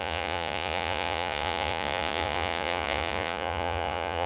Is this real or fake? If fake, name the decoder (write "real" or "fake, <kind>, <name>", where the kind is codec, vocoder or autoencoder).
fake, vocoder, Vocos